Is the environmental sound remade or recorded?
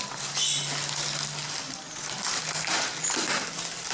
recorded